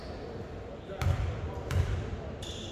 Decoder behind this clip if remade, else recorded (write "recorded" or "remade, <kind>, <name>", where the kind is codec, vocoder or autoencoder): recorded